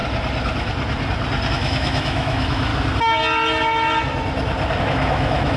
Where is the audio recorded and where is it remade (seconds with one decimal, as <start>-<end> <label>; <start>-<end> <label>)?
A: 0.0-1.5 recorded; 1.5-2.7 remade; 2.7-4.8 recorded; 4.8-5.6 remade